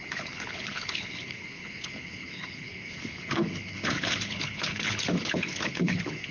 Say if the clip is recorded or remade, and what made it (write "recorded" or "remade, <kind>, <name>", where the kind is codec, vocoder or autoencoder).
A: remade, codec, HILCodec